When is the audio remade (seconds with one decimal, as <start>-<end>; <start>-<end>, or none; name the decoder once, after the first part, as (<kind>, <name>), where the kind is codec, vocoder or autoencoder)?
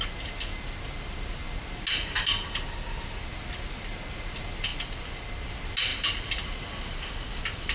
none